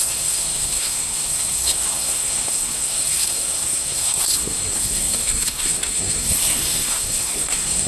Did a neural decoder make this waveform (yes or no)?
yes